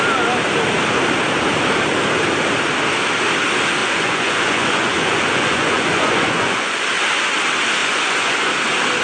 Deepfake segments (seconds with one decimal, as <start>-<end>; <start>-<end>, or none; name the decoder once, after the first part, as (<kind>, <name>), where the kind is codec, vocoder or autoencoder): 3.8-6.8 (vocoder, Vocos); 7.8-8.5